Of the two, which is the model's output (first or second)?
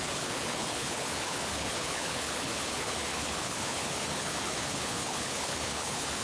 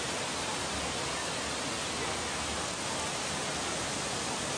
first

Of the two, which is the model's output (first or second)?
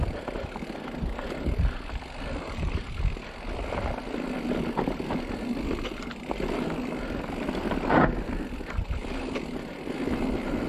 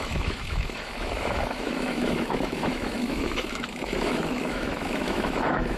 second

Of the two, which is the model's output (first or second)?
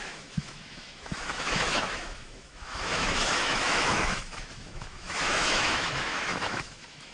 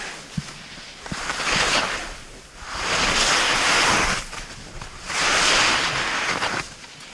first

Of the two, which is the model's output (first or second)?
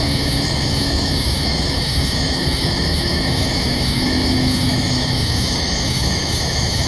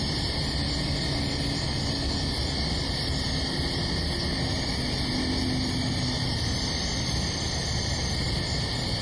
first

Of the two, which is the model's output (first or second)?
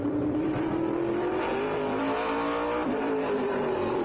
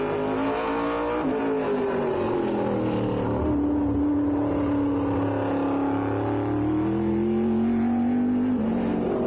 first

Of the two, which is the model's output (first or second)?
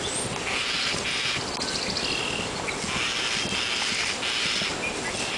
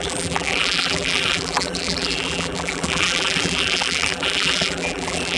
second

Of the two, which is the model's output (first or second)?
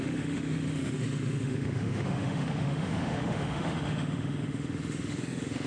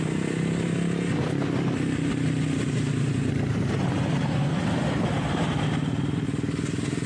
first